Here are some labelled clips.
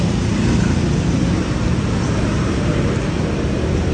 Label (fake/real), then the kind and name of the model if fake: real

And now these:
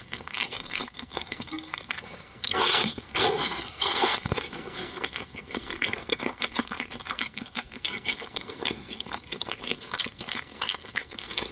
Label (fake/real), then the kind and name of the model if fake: fake, codec, SNAC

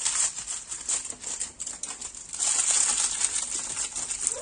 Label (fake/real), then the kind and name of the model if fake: real